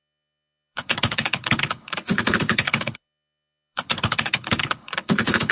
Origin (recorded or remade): remade